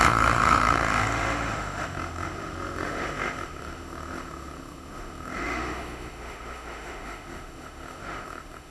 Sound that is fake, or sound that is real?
fake